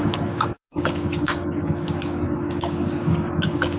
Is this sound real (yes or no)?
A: no